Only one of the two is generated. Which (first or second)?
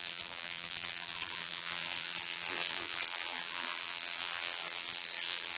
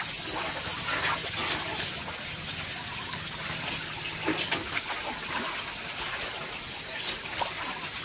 first